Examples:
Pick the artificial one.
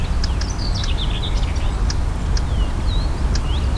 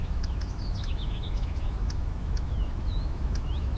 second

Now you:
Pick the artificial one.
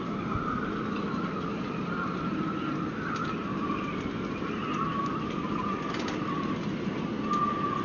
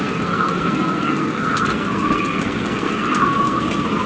second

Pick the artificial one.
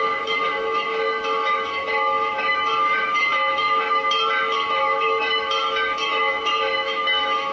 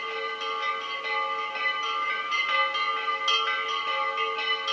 first